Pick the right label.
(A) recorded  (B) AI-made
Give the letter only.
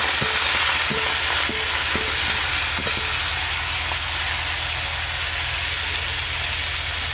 A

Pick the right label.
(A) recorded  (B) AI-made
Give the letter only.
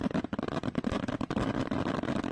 A